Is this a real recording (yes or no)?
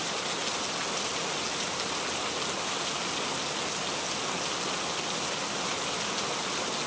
yes